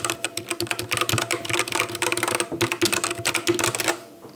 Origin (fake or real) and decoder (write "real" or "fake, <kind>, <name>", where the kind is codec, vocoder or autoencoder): real